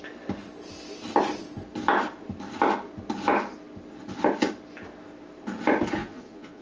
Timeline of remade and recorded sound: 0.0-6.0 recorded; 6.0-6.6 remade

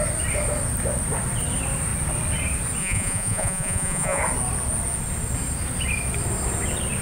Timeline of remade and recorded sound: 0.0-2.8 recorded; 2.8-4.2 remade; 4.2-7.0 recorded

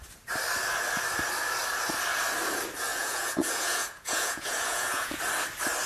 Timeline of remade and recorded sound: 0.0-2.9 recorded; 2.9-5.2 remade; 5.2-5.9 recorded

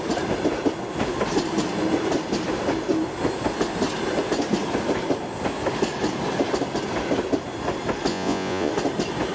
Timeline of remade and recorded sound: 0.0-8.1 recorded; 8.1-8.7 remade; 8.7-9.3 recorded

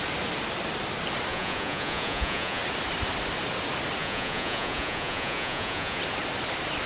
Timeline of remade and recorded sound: 0.0-1.3 recorded; 1.3-2.6 remade; 2.6-4.0 recorded; 4.0-6.0 remade; 6.0-6.9 recorded

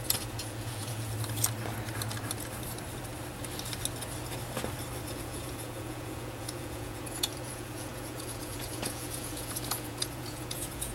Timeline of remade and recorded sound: 0.0-1.1 remade; 1.1-5.1 recorded; 5.1-10.9 remade

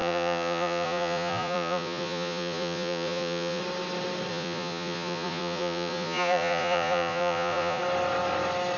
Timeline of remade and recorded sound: 0.0-3.6 remade; 3.6-4.3 recorded; 4.3-7.8 remade; 7.8-8.8 recorded